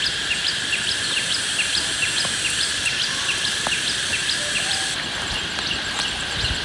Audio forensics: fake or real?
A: real